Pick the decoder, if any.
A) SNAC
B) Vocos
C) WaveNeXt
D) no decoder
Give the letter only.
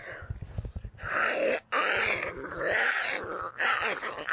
D